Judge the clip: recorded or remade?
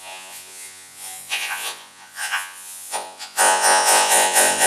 remade